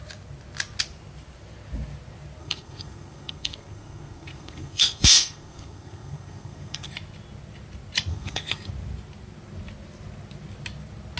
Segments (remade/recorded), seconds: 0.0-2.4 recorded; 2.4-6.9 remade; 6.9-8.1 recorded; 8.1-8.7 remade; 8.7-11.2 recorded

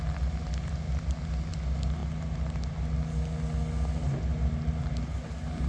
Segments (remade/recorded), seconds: 0.0-5.7 recorded

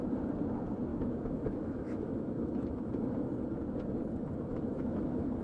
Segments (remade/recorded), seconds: 0.0-0.9 recorded; 0.9-2.9 remade; 2.9-4.5 recorded; 4.5-5.4 remade

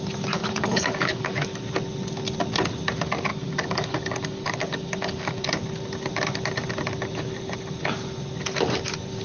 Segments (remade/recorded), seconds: 0.0-0.4 recorded; 0.4-1.6 remade; 1.6-3.3 recorded; 3.3-5.5 remade; 5.5-9.2 recorded

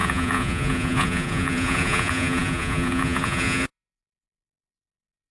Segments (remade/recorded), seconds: 0.0-5.3 remade

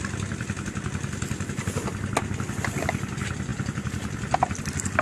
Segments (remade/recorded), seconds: 0.0-5.0 recorded

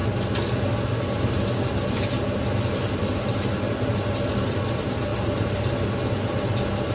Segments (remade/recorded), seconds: 0.0-3.5 recorded; 3.5-5.1 remade; 5.1-6.9 recorded